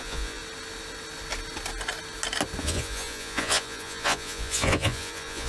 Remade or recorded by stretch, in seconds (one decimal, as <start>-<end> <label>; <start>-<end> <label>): 0.0-0.4 remade; 0.4-2.6 recorded; 2.6-5.5 remade